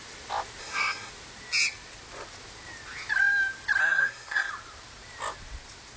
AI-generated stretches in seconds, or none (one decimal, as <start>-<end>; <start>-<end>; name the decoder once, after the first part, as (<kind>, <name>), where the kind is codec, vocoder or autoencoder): 0.6-1.1 (codec, SNAC); 3.8-4.5